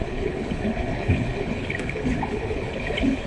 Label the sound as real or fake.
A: fake